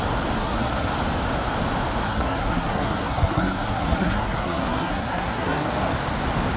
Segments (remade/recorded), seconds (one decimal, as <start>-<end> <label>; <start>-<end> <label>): 0.0-0.4 recorded; 0.4-0.9 remade; 0.9-2.0 recorded; 2.0-5.7 remade; 5.7-6.6 recorded